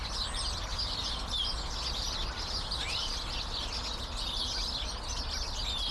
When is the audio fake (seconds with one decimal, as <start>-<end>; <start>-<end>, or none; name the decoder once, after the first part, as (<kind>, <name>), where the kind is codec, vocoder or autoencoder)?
none